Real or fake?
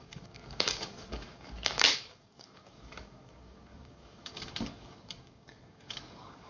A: fake